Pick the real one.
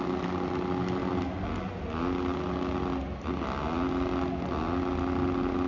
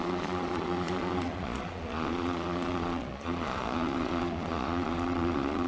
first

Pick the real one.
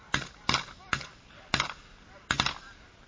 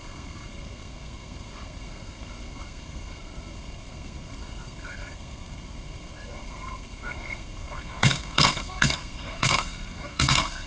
first